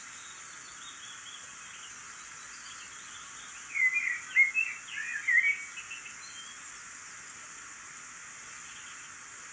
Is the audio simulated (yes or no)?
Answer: no